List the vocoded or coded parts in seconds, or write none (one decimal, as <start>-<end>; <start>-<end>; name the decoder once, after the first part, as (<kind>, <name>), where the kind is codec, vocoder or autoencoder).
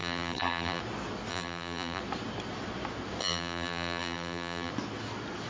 0.0-0.8 (vocoder, BigVGAN v2); 1.3-2.0; 3.2-4.7